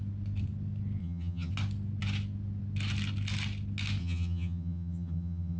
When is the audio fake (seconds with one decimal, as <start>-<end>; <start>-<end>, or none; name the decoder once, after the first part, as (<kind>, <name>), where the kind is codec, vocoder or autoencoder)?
1.0-1.5 (vocoder, HiFi-GAN); 4.0-5.6